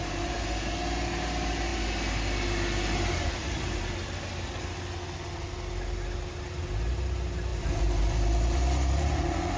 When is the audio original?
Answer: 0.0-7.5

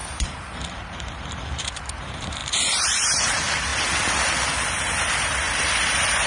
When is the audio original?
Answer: 3.7-4.8